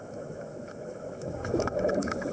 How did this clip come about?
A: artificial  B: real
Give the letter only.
A